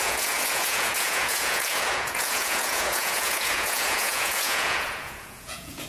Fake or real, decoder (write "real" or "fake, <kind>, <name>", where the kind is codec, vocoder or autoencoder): fake, vocoder, Vocos